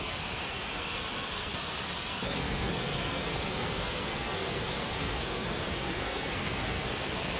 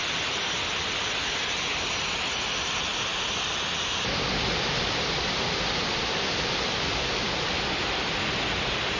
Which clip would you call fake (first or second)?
first